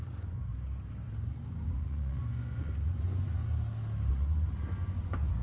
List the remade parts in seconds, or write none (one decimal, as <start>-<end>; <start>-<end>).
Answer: 0.0-0.5; 1.5-3.4; 4.1-5.4